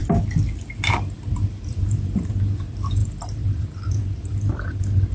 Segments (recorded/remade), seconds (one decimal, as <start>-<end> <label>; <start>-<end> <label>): 0.0-0.9 recorded; 0.9-5.1 remade

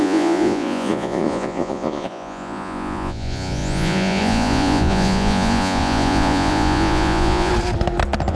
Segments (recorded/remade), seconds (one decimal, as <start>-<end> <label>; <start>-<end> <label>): 0.0-7.5 remade; 7.5-8.3 recorded

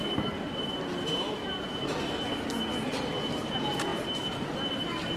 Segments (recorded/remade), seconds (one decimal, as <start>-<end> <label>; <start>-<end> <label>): 0.0-5.2 recorded

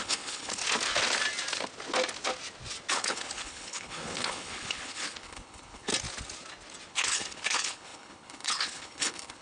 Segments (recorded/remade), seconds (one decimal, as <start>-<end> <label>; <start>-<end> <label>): 0.0-0.6 remade; 0.6-2.9 recorded; 2.9-5.9 remade; 5.9-6.9 recorded; 6.9-9.4 remade

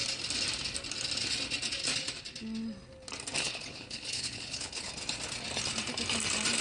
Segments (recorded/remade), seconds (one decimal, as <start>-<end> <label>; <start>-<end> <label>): 0.0-3.4 recorded; 3.4-4.9 remade; 4.9-6.6 recorded